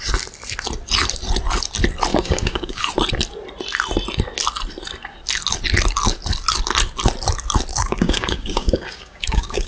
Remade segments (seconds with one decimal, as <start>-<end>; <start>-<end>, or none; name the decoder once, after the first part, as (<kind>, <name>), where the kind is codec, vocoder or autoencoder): 2.1-2.8 (codec, DAC); 7.7-9.7